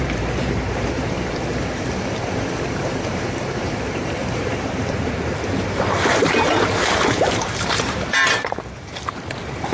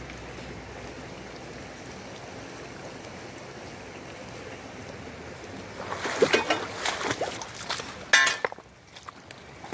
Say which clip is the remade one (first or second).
first